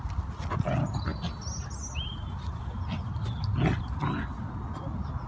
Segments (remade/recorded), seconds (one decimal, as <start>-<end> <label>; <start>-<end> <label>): 0.0-5.3 recorded